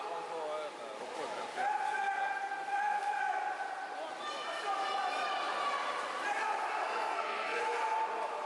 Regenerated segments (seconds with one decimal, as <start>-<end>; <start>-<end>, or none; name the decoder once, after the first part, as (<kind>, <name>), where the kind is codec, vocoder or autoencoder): 6.8-7.6 (codec, SNAC)